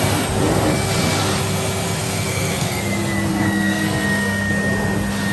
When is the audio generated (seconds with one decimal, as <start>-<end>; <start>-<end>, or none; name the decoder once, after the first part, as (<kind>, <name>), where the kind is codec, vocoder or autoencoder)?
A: 2.0-2.8 (codec, SNAC); 3.3-4.5